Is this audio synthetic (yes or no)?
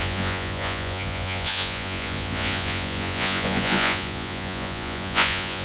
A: yes